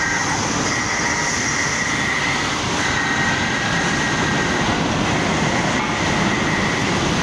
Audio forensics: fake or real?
real